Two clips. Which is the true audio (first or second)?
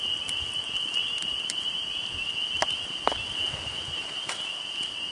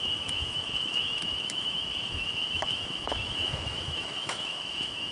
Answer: first